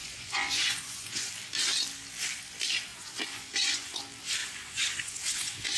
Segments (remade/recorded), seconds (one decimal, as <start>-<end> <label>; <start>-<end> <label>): 0.0-1.3 remade; 1.3-2.9 recorded; 2.9-4.0 remade; 4.0-4.4 recorded; 4.4-5.8 remade